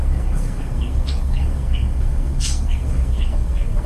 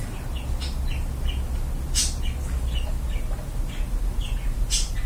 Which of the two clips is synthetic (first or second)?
first